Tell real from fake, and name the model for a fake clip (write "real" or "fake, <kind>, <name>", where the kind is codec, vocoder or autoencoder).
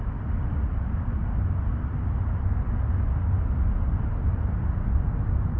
real